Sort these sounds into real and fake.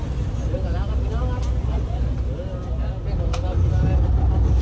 real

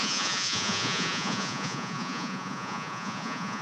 fake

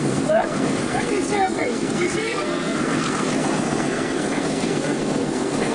fake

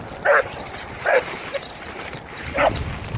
real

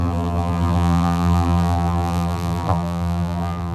fake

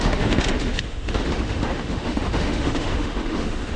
fake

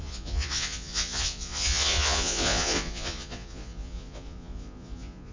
fake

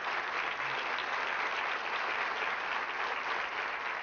real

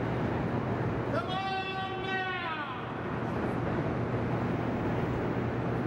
real